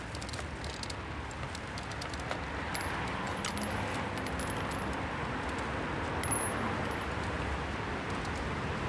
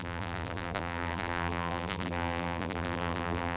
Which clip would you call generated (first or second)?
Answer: second